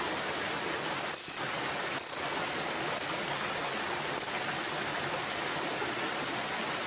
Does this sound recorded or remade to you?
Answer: recorded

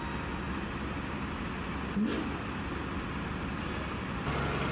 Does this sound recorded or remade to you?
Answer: recorded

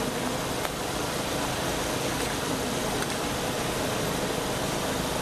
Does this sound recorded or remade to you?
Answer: recorded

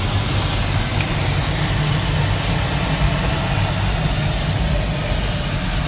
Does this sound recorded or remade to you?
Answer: recorded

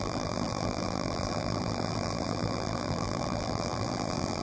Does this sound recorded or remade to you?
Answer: remade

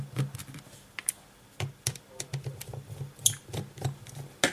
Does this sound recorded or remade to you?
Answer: recorded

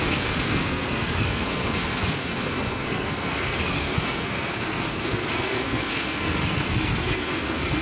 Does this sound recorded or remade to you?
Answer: remade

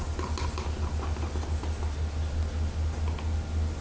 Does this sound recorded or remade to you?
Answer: recorded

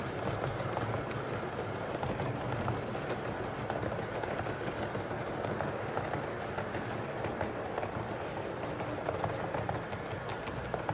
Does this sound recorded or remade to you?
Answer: recorded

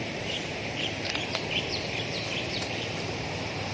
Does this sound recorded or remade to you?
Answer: remade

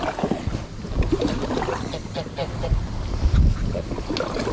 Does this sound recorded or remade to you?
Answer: recorded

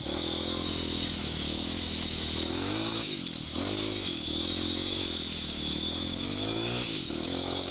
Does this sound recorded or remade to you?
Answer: remade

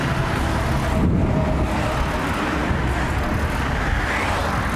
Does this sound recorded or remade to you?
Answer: recorded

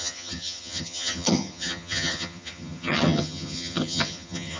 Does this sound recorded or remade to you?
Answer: remade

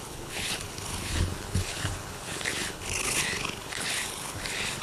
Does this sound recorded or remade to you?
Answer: remade